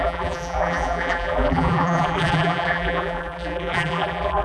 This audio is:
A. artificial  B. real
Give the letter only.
A